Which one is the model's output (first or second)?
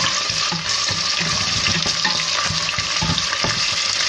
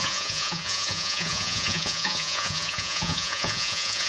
second